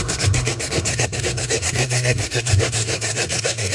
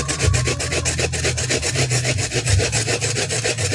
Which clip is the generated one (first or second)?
first